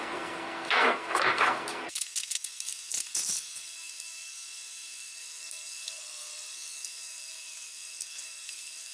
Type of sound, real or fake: fake